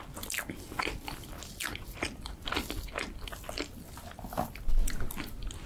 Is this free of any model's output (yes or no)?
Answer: yes